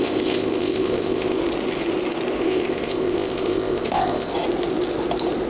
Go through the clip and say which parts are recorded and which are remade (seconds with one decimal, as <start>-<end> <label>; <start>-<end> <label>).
0.0-1.4 remade; 1.4-2.4 recorded; 2.4-4.3 remade; 4.3-5.5 recorded